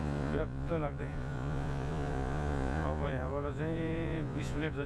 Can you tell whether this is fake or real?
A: fake